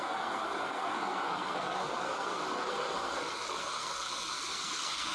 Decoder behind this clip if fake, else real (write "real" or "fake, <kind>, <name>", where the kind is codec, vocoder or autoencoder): fake, codec, SNAC